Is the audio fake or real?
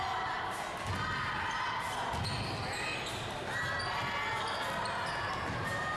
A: real